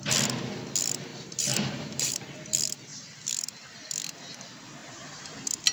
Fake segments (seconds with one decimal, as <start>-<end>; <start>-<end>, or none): 1.1-2.2; 4.8-5.3